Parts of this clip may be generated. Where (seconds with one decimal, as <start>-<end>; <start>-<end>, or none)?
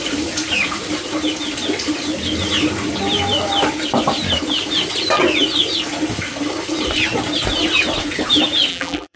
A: 8.7-9.2